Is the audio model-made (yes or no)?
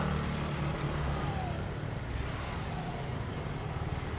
no